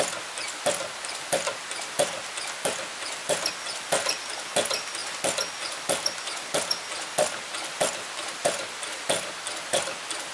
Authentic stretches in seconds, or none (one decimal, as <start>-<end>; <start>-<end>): 0.0-10.3